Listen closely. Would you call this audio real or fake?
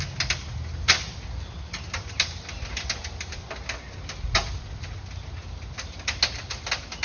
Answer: real